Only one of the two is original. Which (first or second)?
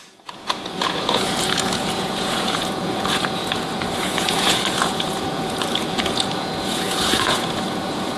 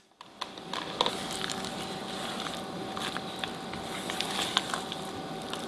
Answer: second